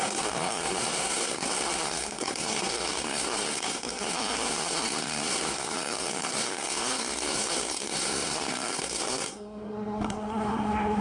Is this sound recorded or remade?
remade